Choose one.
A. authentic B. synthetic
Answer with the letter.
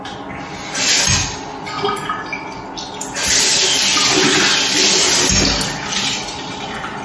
A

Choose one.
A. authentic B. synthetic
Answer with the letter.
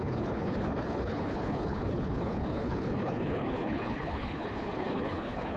B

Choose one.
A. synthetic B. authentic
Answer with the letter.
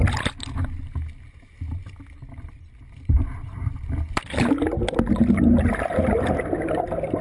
B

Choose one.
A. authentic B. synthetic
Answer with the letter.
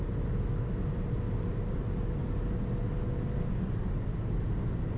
A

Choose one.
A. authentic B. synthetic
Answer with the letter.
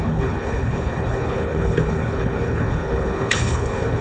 B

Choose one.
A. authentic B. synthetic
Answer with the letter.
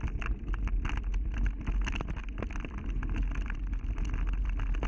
A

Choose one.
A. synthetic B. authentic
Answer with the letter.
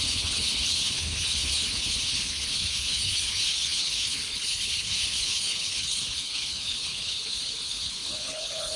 A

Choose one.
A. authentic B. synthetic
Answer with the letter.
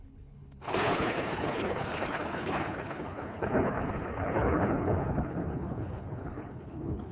B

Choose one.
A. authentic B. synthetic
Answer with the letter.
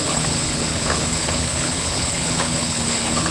B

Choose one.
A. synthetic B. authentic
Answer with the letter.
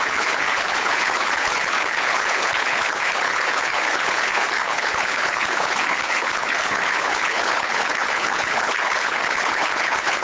A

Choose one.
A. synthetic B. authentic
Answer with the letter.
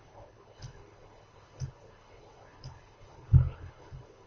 A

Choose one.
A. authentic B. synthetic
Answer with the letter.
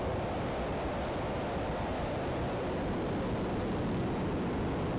A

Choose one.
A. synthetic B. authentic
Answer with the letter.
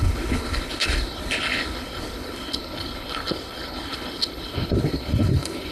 A